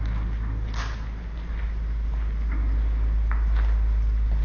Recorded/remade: recorded